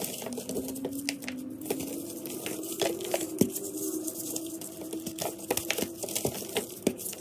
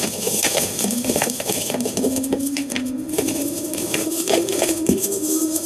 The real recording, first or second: first